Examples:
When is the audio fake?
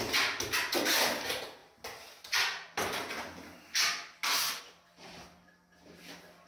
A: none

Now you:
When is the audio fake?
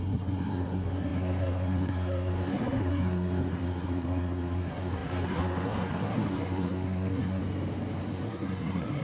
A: 0.0-7.4 (codec, SNAC); 8.1-9.0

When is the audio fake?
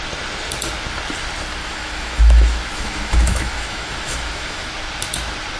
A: 1.6-4.7 (autoencoder, DAC-VAE)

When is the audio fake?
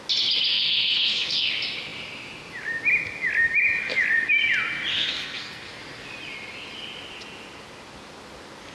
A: 0.5-1.5 (codec, SNAC); 4.9-5.8